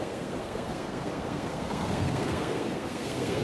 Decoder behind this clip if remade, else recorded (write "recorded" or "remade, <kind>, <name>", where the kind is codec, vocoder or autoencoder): remade, codec, SNAC